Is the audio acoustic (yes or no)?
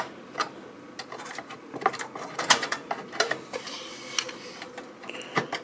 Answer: yes